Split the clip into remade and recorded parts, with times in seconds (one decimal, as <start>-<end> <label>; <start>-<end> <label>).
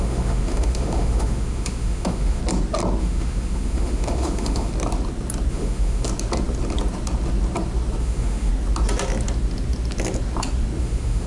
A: 0.0-2.4 remade; 2.4-3.0 recorded; 3.0-4.7 remade; 4.7-5.5 recorded; 5.5-6.1 remade; 6.1-8.0 recorded; 8.0-8.5 remade; 8.5-10.8 recorded; 10.8-11.3 remade